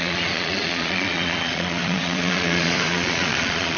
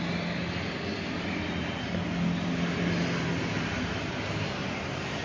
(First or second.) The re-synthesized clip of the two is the first